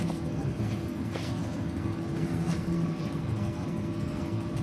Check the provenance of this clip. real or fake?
fake